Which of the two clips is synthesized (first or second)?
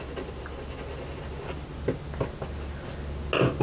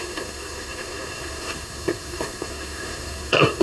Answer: second